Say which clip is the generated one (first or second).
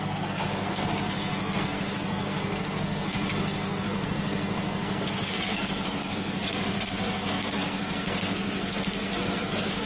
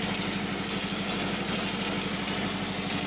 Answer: first